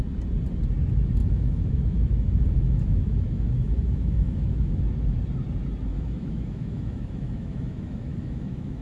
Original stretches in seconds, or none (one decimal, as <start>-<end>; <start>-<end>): 0.0-1.2; 4.8-5.9